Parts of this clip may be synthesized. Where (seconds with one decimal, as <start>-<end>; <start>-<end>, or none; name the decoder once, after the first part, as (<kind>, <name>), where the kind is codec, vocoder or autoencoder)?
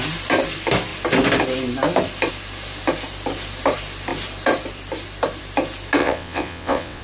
6.0-7.0 (vocoder, WaveNeXt)